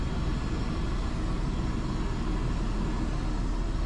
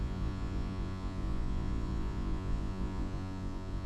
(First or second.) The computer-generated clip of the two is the second